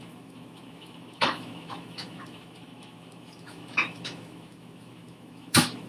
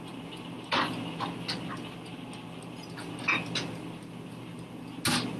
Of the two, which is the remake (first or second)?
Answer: first